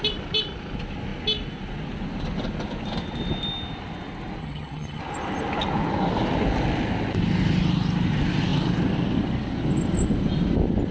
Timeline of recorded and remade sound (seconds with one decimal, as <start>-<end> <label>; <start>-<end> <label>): 0.0-4.4 recorded; 4.4-5.0 remade; 5.0-10.9 recorded